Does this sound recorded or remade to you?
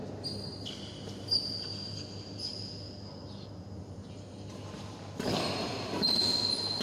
recorded